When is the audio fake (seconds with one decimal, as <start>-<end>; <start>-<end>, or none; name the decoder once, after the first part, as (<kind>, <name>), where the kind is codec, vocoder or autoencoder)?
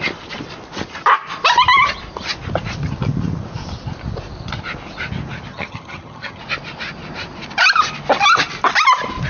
5.5-6.4 (vocoder, HiFi-GAN)